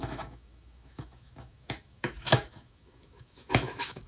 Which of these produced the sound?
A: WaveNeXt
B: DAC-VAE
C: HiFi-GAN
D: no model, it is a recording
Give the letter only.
B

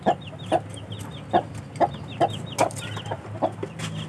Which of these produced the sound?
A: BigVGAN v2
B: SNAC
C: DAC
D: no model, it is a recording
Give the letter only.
D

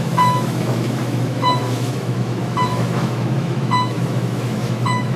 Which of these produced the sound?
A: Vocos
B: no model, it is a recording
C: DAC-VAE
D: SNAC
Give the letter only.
C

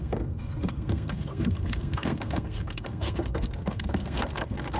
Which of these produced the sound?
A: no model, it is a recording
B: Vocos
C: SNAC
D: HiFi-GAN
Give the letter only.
C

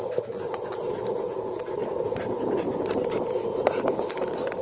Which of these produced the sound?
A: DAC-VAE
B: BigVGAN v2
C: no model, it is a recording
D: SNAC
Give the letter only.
C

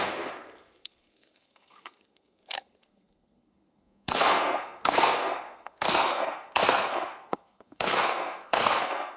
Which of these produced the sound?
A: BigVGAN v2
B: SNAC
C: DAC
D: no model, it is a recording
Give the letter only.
B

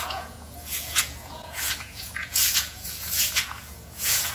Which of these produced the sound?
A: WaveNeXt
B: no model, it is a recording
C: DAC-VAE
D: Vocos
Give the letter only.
D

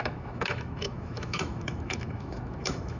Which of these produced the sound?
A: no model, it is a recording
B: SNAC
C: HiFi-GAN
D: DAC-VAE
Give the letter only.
D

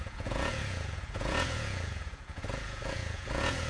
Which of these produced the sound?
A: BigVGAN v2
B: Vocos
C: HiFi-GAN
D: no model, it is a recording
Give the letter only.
B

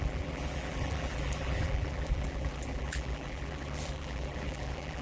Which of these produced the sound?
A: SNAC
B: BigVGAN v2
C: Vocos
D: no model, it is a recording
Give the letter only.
B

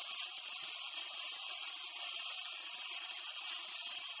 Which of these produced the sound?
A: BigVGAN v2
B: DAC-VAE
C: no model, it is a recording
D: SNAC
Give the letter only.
C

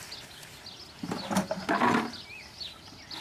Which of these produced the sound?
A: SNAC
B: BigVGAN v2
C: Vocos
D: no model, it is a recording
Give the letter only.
D